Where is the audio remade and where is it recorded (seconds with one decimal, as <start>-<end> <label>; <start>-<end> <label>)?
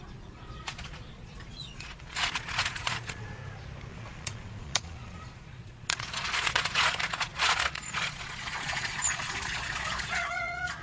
0.0-3.4 remade; 3.4-3.9 recorded; 3.9-10.8 remade